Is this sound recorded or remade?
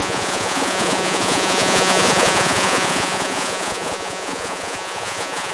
remade